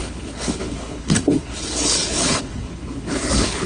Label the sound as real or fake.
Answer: fake